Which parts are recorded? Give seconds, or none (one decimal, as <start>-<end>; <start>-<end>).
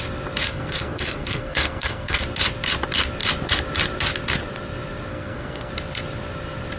0.0-0.5; 2.2-5.1; 5.7-6.8